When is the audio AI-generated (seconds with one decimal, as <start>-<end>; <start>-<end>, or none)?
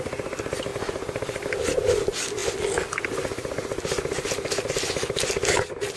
0.7-1.5